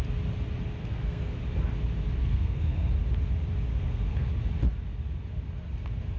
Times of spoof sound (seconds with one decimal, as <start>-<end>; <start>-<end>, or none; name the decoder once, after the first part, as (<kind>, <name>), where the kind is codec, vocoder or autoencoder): 0.8-1.4 (codec, SNAC); 2.2-2.9; 3.7-4.3